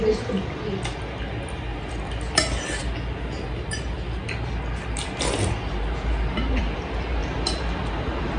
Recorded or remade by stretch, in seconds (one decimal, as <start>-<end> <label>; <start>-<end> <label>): 0.0-8.4 recorded